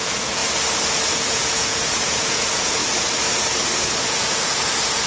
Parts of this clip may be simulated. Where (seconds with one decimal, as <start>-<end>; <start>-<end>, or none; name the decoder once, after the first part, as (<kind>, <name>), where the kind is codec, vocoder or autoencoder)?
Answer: 0.0-0.4 (vocoder, Vocos); 1.1-2.8; 4.0-5.1